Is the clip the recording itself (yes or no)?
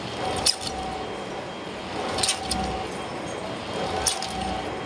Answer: yes